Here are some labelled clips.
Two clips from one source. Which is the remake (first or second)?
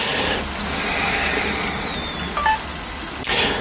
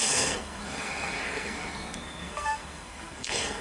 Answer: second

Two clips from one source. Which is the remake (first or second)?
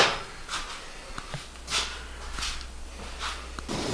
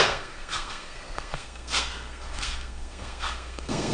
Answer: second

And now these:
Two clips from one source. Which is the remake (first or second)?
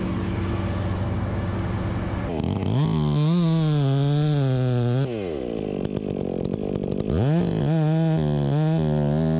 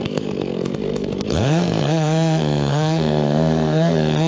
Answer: second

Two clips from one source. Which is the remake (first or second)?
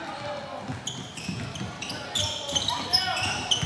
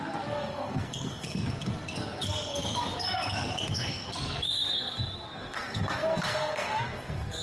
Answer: second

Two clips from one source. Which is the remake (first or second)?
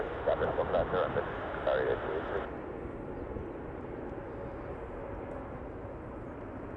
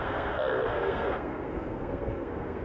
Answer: second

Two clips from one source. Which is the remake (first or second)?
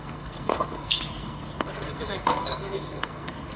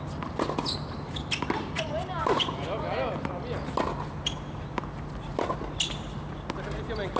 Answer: first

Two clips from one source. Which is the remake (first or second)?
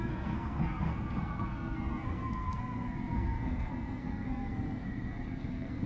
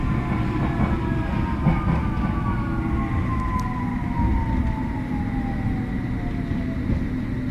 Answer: first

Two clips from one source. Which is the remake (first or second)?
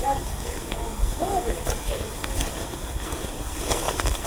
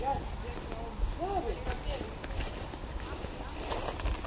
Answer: first